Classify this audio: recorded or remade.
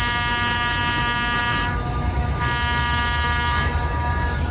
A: remade